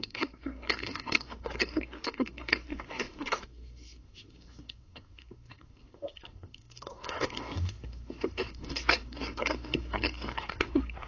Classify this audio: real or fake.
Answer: fake